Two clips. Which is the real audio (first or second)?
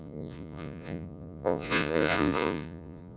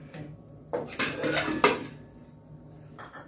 second